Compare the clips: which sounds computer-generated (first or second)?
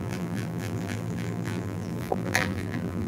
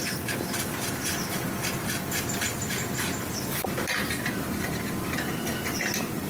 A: first